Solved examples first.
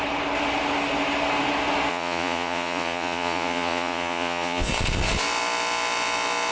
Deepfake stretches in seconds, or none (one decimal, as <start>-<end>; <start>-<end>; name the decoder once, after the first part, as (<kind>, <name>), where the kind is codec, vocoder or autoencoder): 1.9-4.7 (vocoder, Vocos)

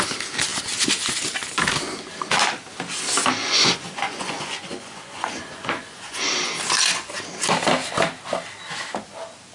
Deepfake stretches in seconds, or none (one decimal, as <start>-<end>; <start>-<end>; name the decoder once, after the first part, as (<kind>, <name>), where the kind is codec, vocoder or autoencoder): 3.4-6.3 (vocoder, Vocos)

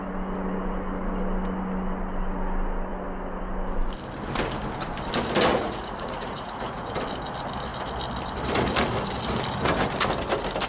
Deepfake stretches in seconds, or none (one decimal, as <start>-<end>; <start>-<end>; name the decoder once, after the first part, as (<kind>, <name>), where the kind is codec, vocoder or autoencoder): 5.5-6.9 (vocoder, Vocos)

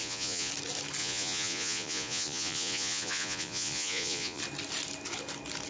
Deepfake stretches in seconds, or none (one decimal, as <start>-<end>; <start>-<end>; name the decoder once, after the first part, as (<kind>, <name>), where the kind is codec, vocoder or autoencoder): 0.0-0.5 (vocoder, Vocos); 1.0-4.4